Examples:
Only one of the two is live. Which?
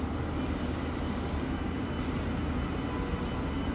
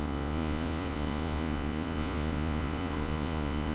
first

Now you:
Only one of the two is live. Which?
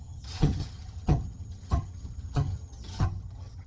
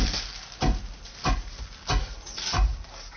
second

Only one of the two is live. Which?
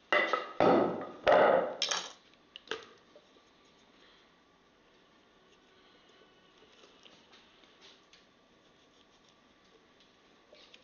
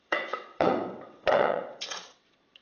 first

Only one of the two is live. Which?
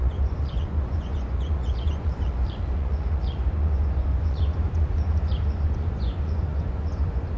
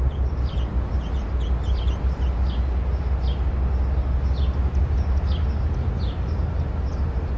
second